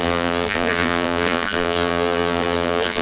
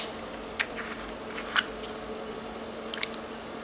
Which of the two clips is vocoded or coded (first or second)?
first